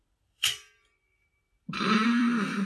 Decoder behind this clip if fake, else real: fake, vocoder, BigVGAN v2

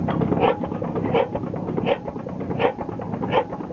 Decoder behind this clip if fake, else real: real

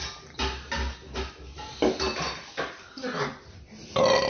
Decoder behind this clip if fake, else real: real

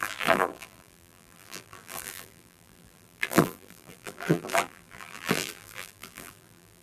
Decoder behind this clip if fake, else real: fake, vocoder, BigVGAN v2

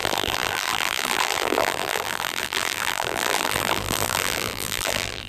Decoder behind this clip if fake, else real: fake, vocoder, BigVGAN v2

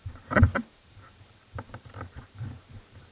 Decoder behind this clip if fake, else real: fake, vocoder, BigVGAN v2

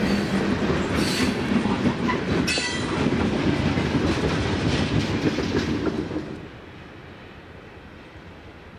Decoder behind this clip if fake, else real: real